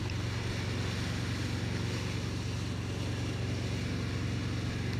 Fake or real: real